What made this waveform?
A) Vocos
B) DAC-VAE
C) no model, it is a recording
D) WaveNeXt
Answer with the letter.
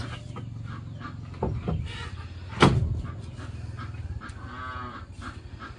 C